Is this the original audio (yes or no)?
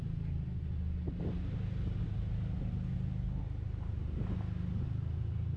yes